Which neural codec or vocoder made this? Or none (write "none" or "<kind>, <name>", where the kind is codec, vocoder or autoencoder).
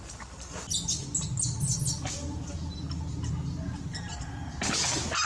none